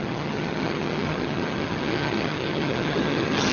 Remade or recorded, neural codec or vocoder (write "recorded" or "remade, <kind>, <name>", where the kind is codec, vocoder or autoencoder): remade, vocoder, HiFi-GAN